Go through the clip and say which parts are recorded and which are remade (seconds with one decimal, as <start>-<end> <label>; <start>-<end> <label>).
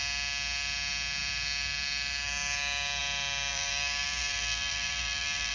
0.0-3.5 recorded; 3.5-5.5 remade